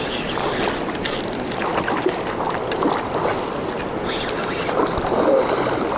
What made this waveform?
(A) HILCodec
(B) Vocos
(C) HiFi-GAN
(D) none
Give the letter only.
D